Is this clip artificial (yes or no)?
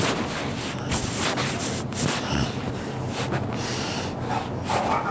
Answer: no